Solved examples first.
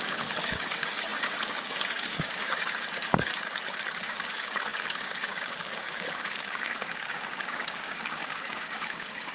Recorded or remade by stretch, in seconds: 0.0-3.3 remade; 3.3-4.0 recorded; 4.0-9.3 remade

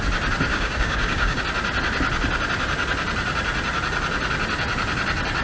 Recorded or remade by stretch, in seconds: 0.0-0.5 recorded; 0.5-1.4 remade; 1.4-5.4 recorded

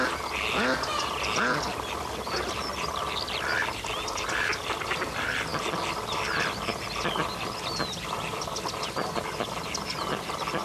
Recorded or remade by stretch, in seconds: 0.0-10.6 recorded

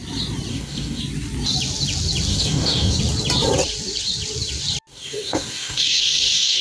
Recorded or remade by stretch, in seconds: 0.0-0.5 recorded; 0.5-1.0 remade; 1.0-2.3 recorded; 2.3-3.0 remade; 3.0-4.9 recorded; 4.9-6.6 remade

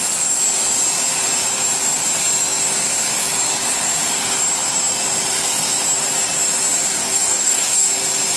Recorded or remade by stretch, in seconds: 0.0-7.0 recorded; 7.0-7.9 remade; 7.9-8.4 recorded

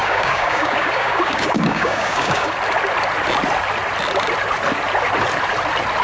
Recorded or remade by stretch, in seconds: 0.0-2.5 remade; 2.5-6.0 recorded